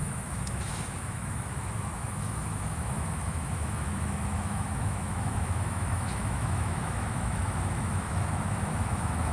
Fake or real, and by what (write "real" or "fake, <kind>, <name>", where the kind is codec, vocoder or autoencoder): fake, autoencoder, DAC-VAE